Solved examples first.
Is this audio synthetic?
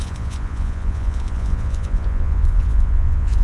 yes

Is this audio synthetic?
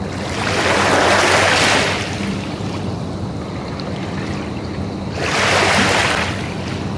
no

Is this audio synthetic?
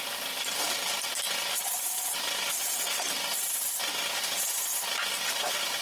no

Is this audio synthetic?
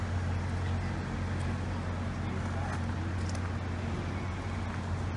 no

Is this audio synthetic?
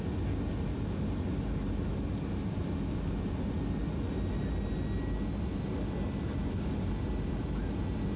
no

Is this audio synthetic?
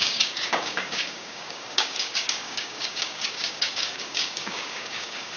yes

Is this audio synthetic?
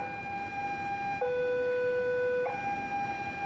no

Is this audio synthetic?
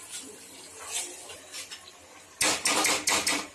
no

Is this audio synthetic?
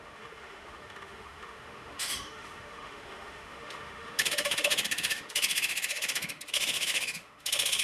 yes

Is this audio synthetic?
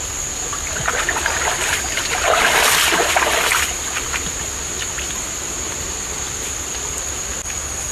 no